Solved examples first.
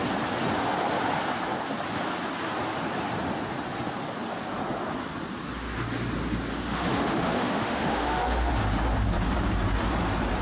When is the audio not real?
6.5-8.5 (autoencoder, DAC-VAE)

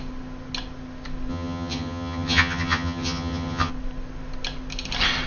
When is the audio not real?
1.3-3.7 (vocoder, HiFi-GAN)

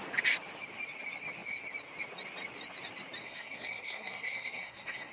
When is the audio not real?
3.2-5.1 (codec, SNAC)

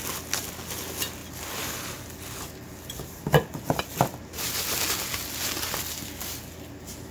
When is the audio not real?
1.2-3.8 (vocoder, BigVGAN v2)

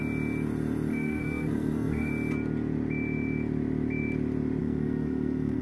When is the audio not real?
0.9-2.1 (codec, SNAC); 4.6-5.6

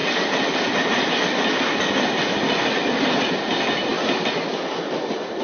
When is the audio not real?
none

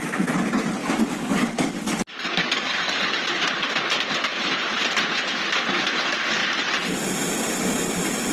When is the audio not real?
0.8-3.2 (codec, DAC)

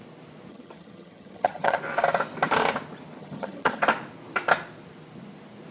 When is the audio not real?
0.5-1.8 (vocoder, HiFi-GAN); 3.2-3.8